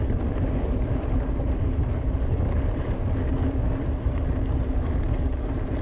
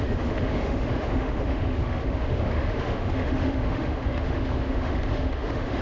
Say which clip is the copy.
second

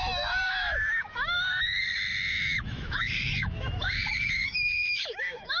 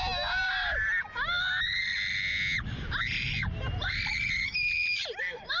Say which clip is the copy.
first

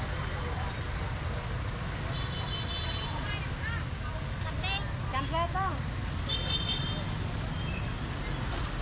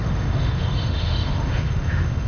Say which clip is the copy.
second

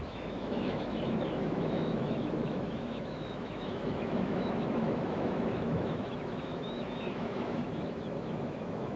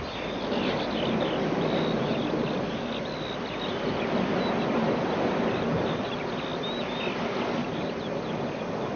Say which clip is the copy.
first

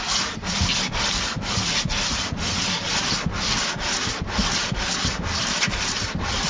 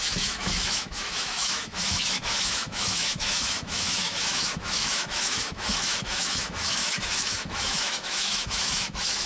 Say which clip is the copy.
second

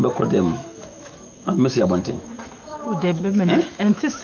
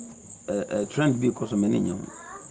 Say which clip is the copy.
first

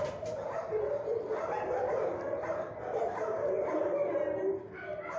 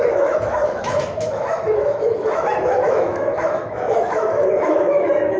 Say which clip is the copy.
second